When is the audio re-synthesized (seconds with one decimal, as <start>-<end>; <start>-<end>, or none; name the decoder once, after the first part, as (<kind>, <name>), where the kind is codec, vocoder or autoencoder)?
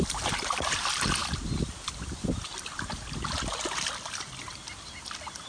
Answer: none